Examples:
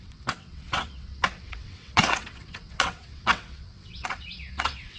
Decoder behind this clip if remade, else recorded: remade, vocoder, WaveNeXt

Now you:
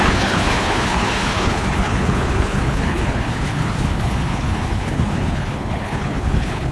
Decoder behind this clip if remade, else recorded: remade, codec, HILCodec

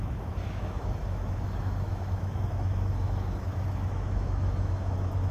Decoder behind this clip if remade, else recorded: remade, autoencoder, DAC-VAE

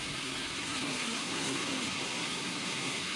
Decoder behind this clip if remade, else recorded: remade, codec, SNAC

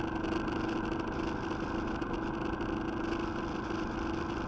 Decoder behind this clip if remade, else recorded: recorded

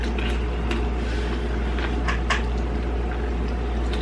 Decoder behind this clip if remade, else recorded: recorded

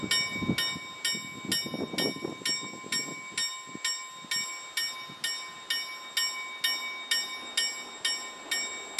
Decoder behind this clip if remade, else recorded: recorded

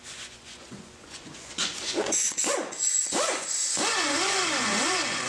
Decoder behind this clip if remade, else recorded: remade, vocoder, Vocos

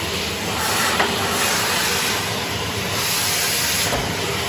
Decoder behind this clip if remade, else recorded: remade, vocoder, BigVGAN v2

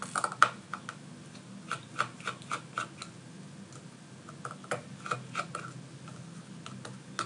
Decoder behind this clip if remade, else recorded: recorded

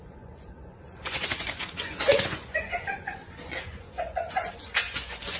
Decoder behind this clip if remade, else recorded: remade, vocoder, Vocos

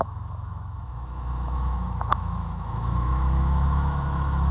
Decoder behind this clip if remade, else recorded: remade, autoencoder, DAC-VAE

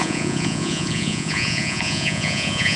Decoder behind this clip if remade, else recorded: remade, vocoder, Vocos